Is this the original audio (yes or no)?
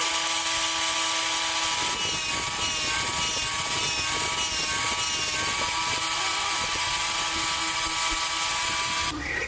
yes